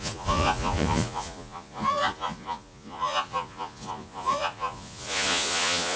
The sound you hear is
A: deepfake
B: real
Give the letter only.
A